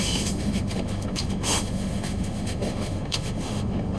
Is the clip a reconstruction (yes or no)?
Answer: yes